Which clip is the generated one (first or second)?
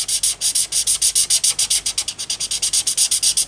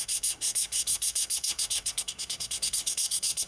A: second